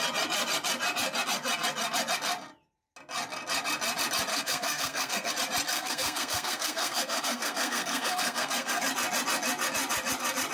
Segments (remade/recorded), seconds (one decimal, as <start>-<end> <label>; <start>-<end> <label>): 0.0-4.3 recorded; 4.3-5.3 remade; 5.3-5.7 recorded; 5.7-8.8 remade; 8.8-10.5 recorded

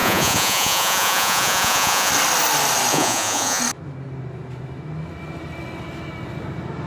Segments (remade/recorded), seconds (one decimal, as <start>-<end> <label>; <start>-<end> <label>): 0.0-2.1 remade; 2.1-2.9 recorded; 2.9-3.6 remade; 3.6-6.9 recorded

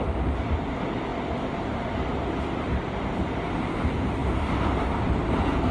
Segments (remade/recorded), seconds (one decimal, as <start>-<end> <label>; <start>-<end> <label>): 0.0-5.7 recorded

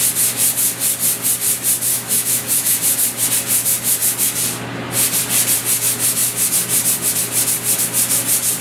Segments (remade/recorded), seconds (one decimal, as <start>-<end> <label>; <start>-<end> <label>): 0.0-1.9 recorded; 1.9-2.8 remade; 2.8-8.6 recorded

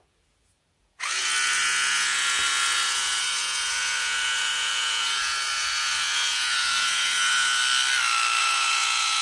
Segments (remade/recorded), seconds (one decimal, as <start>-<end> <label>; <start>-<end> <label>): 0.0-7.6 remade; 7.6-8.4 recorded; 8.4-9.2 remade